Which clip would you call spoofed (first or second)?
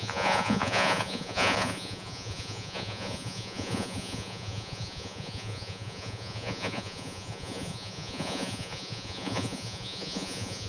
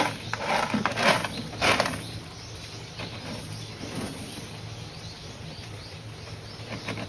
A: first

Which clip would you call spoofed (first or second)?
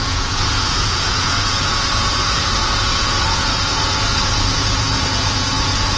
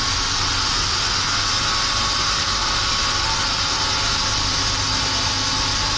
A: first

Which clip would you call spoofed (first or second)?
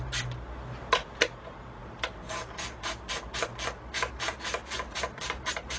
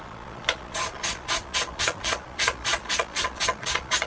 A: second